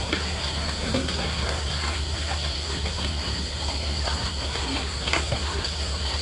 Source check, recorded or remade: remade